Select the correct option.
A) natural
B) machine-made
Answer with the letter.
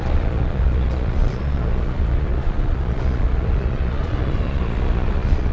B